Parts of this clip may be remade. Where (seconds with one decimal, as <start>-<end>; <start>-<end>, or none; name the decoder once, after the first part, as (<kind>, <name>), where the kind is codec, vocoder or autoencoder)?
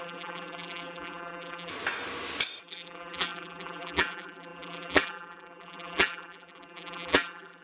0.0-1.7 (vocoder, BigVGAN v2); 2.6-7.6